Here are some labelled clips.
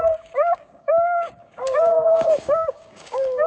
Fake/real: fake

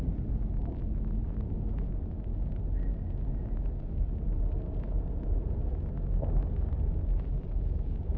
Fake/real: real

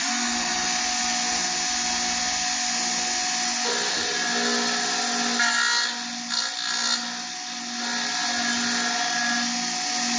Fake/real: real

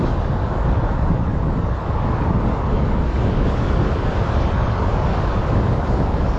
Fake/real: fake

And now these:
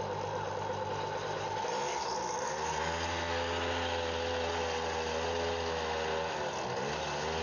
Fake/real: real